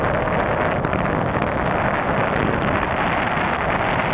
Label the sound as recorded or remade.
recorded